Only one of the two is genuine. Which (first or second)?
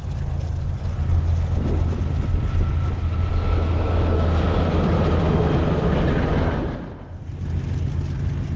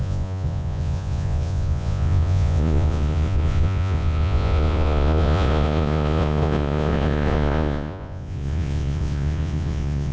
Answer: first